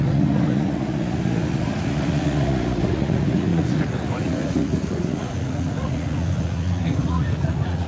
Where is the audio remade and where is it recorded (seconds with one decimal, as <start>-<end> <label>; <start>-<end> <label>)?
0.0-7.9 remade